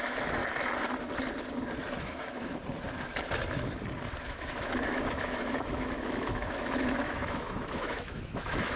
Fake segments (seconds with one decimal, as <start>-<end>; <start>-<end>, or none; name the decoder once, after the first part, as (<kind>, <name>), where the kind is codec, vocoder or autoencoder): 0.0-0.4 (autoencoder, DAC-VAE); 2.0-2.6; 4.2-8.8